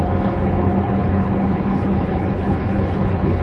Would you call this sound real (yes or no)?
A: no